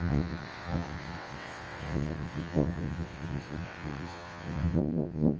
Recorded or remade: remade